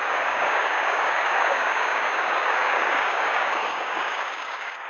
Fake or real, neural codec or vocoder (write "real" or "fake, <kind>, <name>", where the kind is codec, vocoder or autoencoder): fake, codec, DAC